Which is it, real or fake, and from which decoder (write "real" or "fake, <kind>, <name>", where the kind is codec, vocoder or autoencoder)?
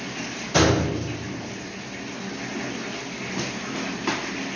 real